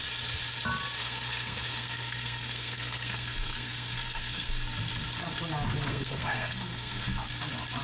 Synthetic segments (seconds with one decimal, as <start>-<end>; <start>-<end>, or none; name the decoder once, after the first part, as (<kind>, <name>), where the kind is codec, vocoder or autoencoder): 1.0-4.5 (codec, SNAC); 5.9-7.1